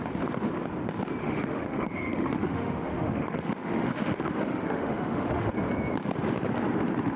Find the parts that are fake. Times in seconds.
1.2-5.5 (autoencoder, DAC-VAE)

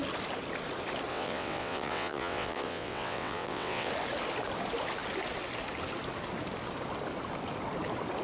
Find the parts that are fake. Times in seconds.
1.1-3.9 (vocoder, WaveNeXt)

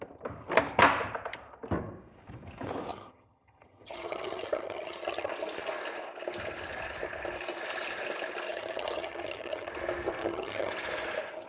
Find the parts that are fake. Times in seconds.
2.9-5.3 (vocoder, HiFi-GAN); 8.5-9.7; 10.2-10.7